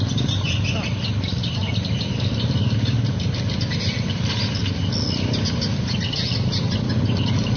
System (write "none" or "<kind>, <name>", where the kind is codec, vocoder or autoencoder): none